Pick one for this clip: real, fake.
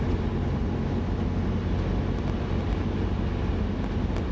real